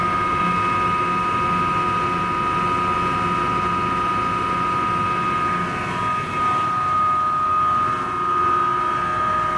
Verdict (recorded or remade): recorded